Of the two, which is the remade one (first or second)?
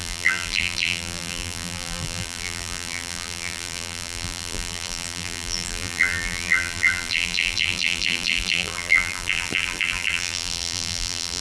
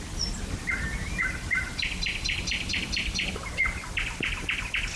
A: first